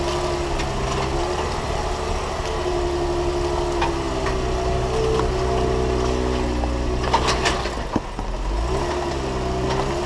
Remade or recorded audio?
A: recorded